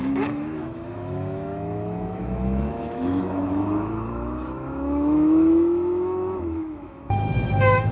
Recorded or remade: remade